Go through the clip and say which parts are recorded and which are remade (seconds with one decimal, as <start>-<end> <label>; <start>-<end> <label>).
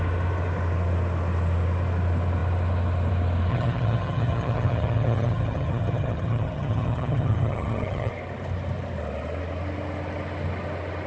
0.0-3.5 recorded; 3.5-8.1 remade; 8.1-11.1 recorded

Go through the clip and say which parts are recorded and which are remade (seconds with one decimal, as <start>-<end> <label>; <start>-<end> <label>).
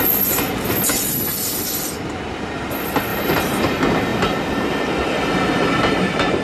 0.0-3.1 recorded; 3.1-3.6 remade; 3.6-6.4 recorded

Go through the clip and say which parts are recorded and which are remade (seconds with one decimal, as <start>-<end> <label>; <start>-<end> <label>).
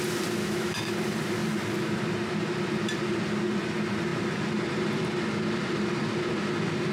0.0-0.4 recorded; 0.4-0.9 remade; 0.9-6.9 recorded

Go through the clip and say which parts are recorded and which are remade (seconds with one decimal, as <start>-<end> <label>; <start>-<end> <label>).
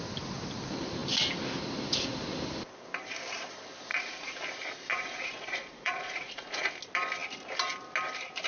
0.0-3.9 recorded; 3.9-4.4 remade; 4.4-4.9 recorded; 4.9-6.7 remade; 6.7-8.5 recorded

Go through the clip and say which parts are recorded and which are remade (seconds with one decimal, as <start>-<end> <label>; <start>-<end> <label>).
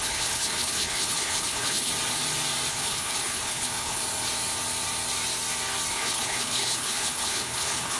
0.0-1.9 remade; 1.9-2.7 recorded; 2.7-4.0 remade; 4.0-5.9 recorded; 5.9-8.0 remade